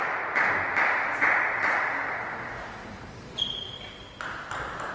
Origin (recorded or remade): recorded